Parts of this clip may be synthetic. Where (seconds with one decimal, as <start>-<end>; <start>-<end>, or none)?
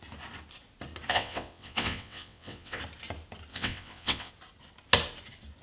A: 1.1-2.8; 3.5-4.3